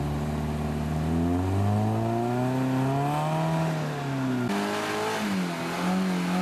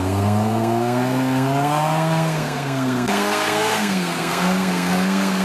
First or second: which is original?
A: first